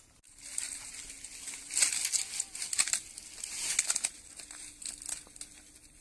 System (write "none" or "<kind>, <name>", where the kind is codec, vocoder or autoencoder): none